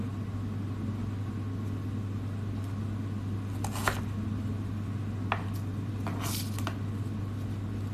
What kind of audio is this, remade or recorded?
recorded